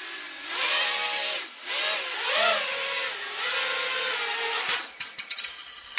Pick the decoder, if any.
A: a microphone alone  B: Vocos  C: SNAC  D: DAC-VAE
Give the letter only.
A